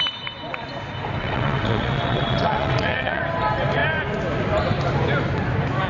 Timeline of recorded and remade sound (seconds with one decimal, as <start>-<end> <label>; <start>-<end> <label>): 0.0-1.2 recorded; 1.2-3.2 remade; 3.2-5.9 recorded